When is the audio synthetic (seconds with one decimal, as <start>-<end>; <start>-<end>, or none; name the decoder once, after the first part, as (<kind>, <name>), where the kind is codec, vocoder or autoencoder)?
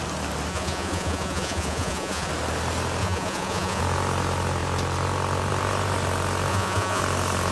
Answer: 0.5-2.3 (vocoder, Vocos); 3.0-3.8; 6.5-7.0